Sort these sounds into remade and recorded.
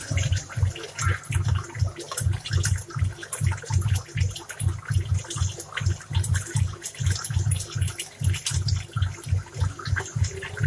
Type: recorded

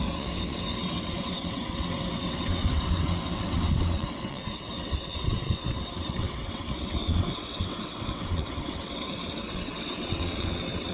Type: remade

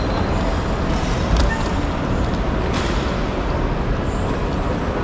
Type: recorded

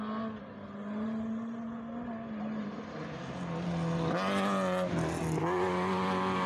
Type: recorded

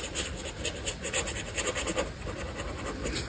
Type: recorded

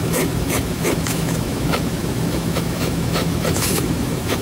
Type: remade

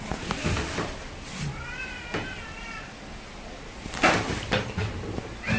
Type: recorded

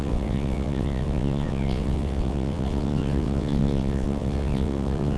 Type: remade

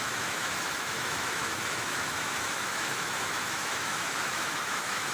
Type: remade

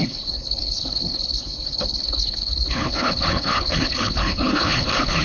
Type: remade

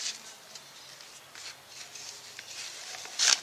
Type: recorded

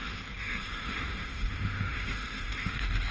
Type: remade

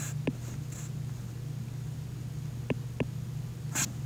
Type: recorded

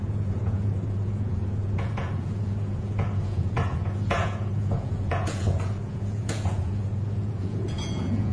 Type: remade